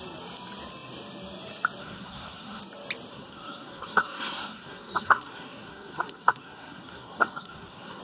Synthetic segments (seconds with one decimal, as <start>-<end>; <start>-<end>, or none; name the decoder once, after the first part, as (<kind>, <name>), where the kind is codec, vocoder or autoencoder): 1.8-2.6 (codec, SNAC); 3.1-8.0